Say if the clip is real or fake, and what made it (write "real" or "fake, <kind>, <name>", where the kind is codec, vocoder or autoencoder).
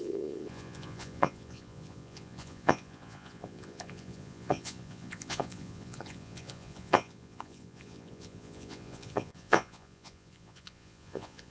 fake, vocoder, Vocos